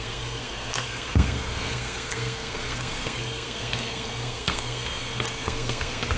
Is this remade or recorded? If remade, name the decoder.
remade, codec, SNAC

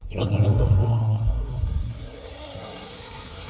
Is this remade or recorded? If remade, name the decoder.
remade, codec, SNAC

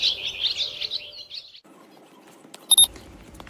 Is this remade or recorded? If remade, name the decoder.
recorded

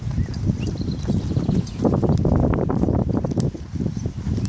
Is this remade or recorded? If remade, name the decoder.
recorded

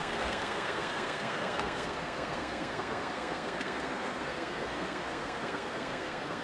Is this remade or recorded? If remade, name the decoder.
remade, codec, SNAC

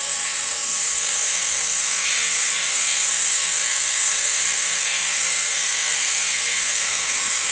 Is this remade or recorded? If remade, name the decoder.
remade, codec, SNAC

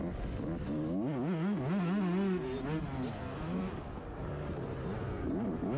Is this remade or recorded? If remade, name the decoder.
recorded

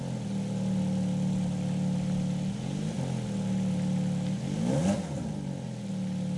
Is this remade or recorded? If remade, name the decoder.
recorded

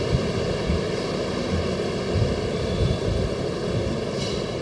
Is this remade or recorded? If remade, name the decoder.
recorded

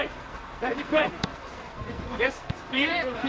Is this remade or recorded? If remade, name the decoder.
remade, codec, SNAC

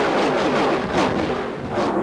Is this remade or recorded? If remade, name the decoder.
recorded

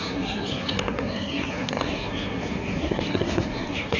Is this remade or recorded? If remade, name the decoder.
remade, codec, SNAC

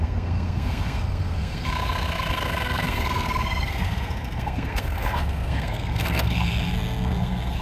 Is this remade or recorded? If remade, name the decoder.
remade, codec, SNAC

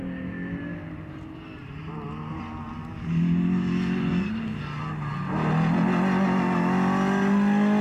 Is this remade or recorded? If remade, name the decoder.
recorded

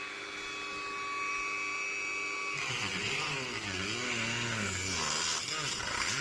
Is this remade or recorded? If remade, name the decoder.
recorded